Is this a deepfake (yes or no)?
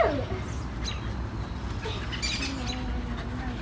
no